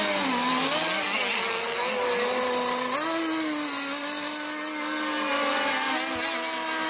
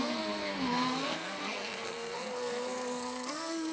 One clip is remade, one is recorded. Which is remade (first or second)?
second